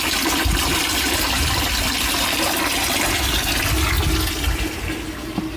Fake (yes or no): no